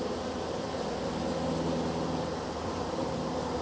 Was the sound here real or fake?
real